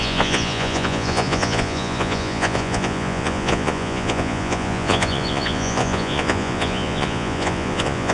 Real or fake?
fake